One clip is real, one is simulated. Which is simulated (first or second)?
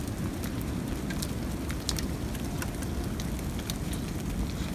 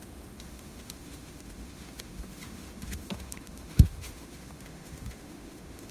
second